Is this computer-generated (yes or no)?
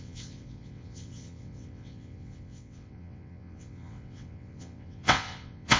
yes